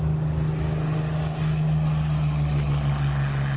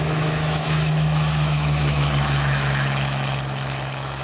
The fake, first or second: second